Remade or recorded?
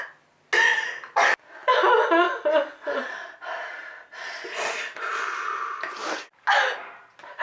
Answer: recorded